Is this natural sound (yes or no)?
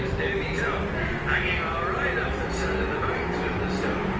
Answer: yes